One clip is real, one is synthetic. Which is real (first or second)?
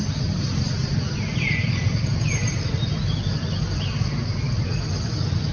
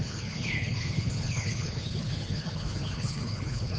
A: first